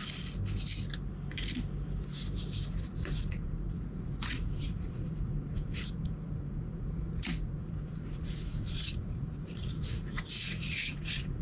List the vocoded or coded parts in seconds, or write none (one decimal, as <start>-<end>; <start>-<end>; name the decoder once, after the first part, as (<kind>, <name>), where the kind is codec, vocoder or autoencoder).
2.7-11.4 (vocoder, Vocos)